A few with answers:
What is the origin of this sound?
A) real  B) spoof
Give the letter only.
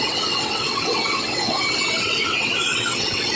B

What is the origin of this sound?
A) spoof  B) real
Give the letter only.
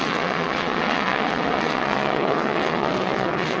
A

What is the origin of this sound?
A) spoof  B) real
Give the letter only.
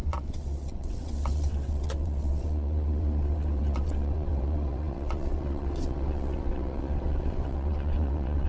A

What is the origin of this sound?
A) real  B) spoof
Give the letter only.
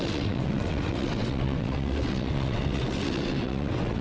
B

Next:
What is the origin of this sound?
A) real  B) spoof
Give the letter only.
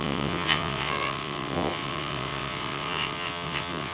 B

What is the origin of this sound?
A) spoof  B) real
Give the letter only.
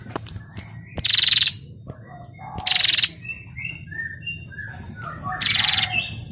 B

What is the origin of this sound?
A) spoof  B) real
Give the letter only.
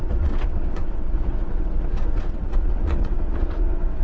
A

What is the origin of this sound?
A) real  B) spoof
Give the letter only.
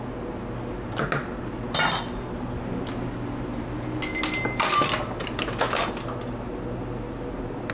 A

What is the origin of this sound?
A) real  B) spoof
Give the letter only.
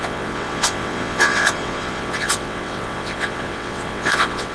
B